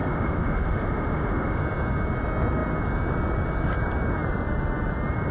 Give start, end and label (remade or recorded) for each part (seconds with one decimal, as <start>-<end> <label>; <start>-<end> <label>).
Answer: 0.0-1.6 remade; 1.6-5.3 recorded